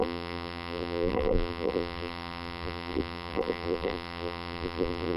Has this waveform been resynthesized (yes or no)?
yes